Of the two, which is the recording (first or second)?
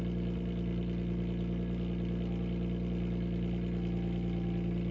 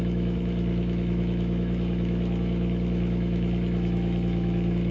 first